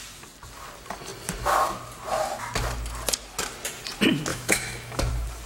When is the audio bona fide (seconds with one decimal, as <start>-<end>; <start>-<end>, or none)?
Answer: 0.0-4.3; 5.1-5.5